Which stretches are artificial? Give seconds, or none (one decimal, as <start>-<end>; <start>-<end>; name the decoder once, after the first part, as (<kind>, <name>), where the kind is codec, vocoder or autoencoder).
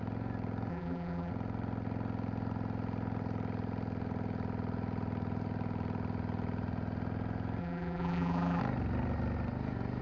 0.7-1.3 (vocoder, BigVGAN v2); 7.6-8.6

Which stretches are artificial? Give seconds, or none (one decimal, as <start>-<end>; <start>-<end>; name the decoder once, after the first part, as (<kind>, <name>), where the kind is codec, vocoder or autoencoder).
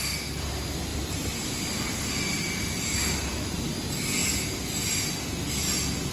0.9-3.7 (vocoder, BigVGAN v2)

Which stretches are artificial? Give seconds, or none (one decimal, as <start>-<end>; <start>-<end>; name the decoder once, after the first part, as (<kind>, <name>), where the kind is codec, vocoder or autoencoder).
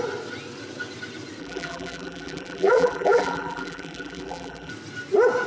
1.4-4.7 (vocoder, BigVGAN v2)